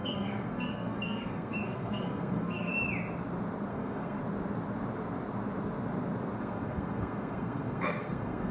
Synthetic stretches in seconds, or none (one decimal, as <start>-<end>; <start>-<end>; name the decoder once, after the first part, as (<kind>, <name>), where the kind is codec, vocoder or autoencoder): 0.0-2.7 (codec, SNAC); 3.7-4.2; 6.4-8.5